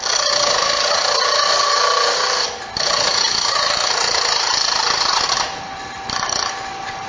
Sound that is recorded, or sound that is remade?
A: recorded